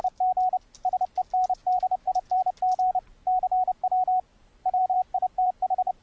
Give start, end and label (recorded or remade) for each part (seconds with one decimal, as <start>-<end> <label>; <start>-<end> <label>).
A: 0.0-1.6 recorded; 1.6-2.4 remade; 2.4-4.3 recorded; 4.3-6.0 remade